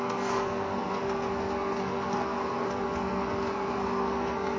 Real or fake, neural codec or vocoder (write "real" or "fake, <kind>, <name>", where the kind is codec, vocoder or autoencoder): fake, codec, SNAC